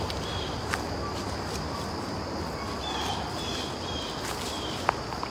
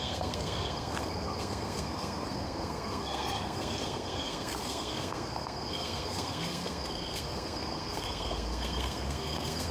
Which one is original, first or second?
first